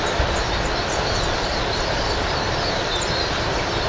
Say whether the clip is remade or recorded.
recorded